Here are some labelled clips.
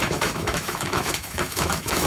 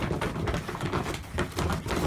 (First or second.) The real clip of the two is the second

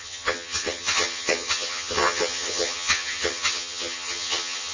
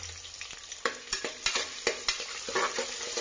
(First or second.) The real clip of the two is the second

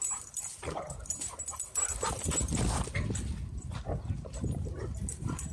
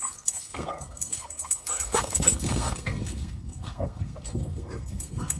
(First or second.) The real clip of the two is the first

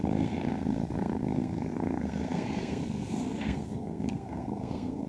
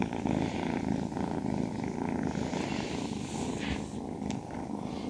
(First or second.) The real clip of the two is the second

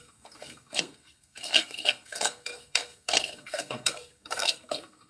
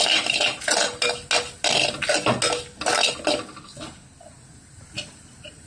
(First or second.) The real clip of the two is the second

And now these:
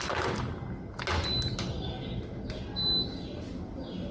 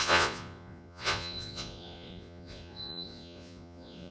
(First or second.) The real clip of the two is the first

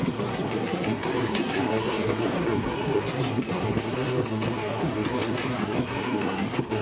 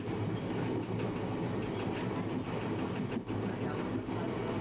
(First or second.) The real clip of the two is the second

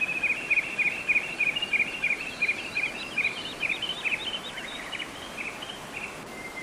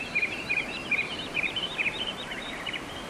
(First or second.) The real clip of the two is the first